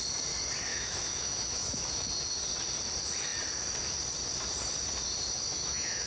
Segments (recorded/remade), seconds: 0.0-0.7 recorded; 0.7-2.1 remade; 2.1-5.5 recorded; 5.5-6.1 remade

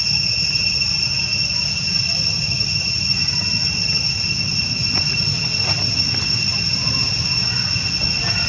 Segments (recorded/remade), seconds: 0.0-8.5 recorded

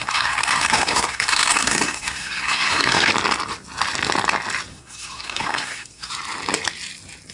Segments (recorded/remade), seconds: 0.0-3.1 remade; 3.1-4.7 recorded; 4.7-6.1 remade; 6.1-7.3 recorded

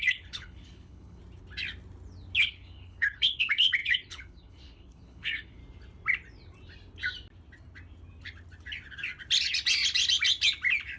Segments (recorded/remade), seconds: 0.0-1.2 remade; 1.2-2.4 recorded; 2.4-5.6 remade; 5.6-11.0 recorded

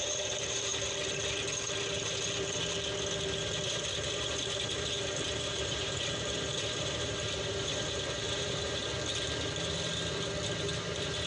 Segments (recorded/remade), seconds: 0.0-0.7 remade; 0.7-3.4 recorded; 3.4-8.8 remade; 8.8-10.6 recorded; 10.6-11.3 remade

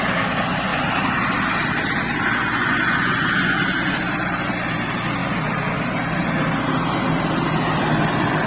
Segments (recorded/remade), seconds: 0.0-2.5 recorded; 2.5-3.6 remade; 3.6-8.5 recorded

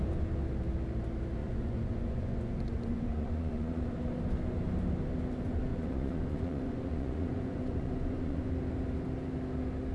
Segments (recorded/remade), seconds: 0.0-1.4 recorded; 1.4-3.8 remade; 3.8-5.7 recorded; 5.7-8.5 remade; 8.5-9.9 recorded